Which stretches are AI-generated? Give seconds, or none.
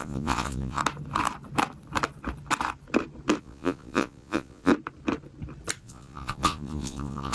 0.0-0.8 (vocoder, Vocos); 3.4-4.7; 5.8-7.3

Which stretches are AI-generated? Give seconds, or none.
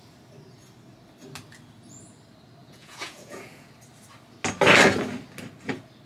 2.6-3.7 (vocoder, Vocos)